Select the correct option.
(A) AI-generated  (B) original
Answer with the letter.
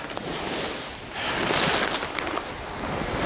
B